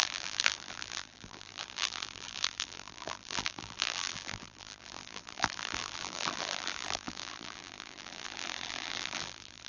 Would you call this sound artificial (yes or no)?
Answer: yes